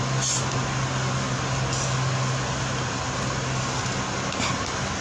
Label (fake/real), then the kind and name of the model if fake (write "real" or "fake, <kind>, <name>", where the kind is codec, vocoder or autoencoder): real